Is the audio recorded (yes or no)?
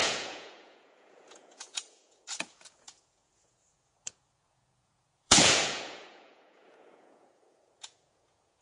no